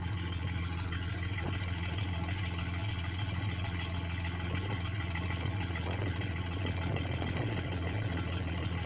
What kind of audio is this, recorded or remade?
remade